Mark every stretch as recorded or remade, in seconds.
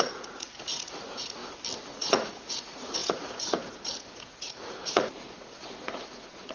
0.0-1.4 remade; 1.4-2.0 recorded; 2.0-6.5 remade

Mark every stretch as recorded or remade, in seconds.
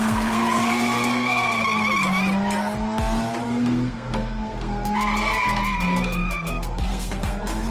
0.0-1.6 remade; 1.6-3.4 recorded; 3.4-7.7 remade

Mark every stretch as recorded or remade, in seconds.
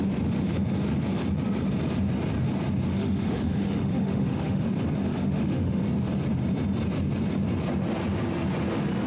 0.0-2.9 recorded; 2.9-4.6 remade; 4.6-5.1 recorded; 5.1-5.8 remade; 5.8-9.1 recorded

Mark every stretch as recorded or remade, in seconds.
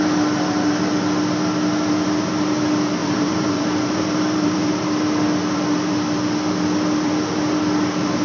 0.0-3.0 recorded; 3.0-4.7 remade; 4.7-8.2 recorded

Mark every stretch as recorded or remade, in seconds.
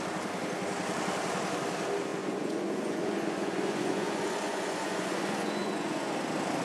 0.0-2.1 recorded; 2.1-6.1 remade; 6.1-6.6 recorded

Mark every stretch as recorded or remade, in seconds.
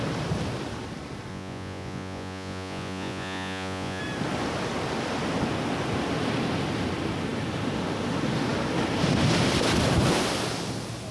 0.0-1.3 recorded; 1.3-4.0 remade; 4.0-11.1 recorded